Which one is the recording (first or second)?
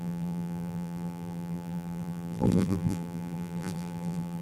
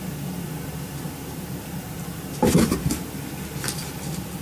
second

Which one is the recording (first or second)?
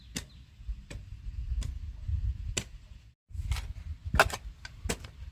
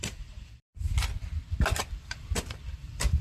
first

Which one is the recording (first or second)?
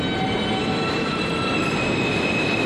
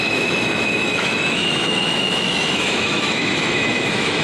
first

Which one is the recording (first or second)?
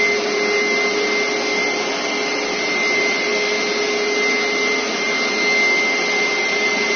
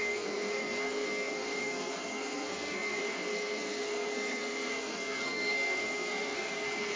first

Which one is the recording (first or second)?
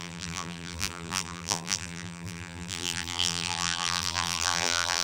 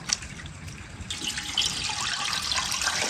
second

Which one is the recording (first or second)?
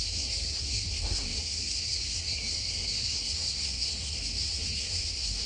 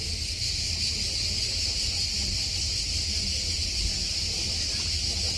second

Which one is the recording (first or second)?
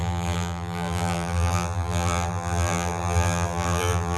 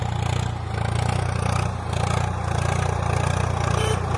second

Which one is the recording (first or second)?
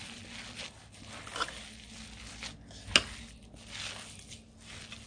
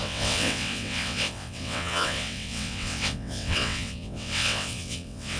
first